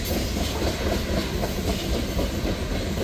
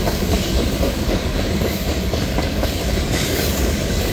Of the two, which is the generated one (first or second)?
second